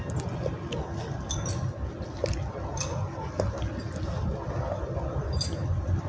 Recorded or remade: recorded